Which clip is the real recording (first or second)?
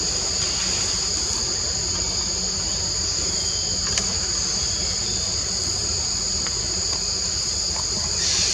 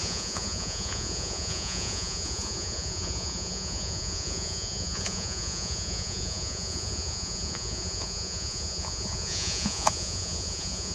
first